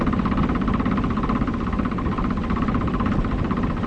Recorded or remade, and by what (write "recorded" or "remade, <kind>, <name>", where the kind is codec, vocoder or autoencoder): recorded